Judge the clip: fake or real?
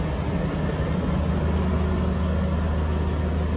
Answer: real